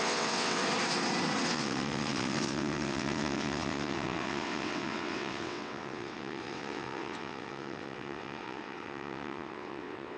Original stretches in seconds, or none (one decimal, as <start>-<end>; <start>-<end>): 0.6-1.5